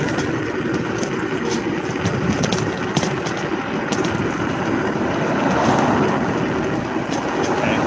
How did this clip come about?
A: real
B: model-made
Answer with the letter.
A